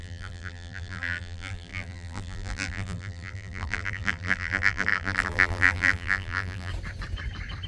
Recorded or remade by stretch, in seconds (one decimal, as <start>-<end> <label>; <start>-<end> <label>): 0.0-6.7 remade; 6.7-7.7 recorded